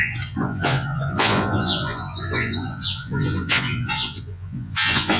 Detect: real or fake fake